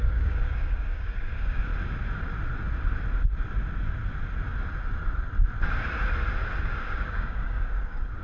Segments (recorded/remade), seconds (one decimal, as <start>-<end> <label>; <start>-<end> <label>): 0.0-1.7 remade; 1.7-6.6 recorded; 6.6-8.2 remade

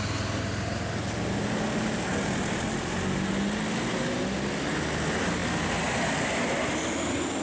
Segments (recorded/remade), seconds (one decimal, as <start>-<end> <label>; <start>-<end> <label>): 0.0-7.4 recorded

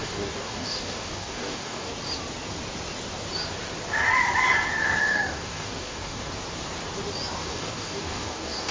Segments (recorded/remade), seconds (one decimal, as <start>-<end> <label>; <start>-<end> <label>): 0.0-1.9 remade; 1.9-5.0 recorded; 5.0-6.3 remade; 6.3-7.4 recorded; 7.4-8.7 remade

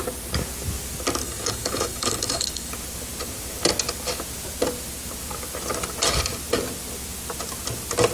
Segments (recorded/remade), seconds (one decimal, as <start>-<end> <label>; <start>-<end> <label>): 0.0-1.2 recorded; 1.2-2.7 remade; 2.7-8.1 recorded